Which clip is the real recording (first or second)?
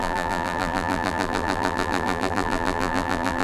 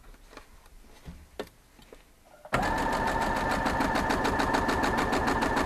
second